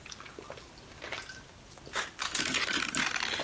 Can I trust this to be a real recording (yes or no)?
yes